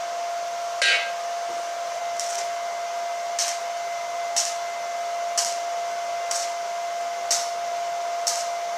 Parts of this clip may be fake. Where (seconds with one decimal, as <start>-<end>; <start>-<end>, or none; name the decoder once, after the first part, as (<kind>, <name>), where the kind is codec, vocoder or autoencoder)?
none